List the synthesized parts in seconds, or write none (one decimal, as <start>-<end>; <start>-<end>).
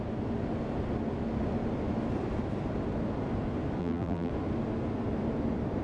3.8-4.3